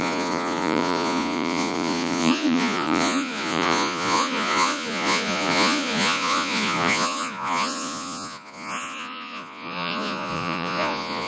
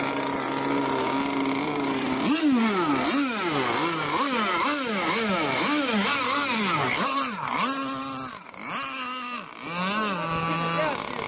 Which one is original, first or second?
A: second